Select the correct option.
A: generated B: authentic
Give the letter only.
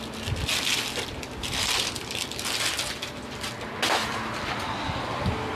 B